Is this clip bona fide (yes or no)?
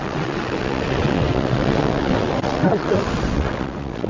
no